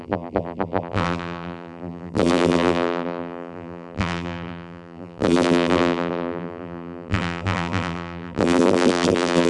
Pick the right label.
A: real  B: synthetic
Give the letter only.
B